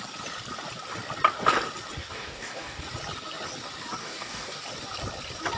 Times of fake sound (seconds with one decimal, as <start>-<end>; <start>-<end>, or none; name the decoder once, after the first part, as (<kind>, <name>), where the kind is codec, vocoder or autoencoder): 2.0-2.8 (codec, DAC); 4.0-4.6